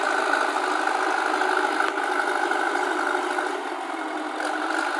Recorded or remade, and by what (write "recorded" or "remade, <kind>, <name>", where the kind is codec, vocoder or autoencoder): recorded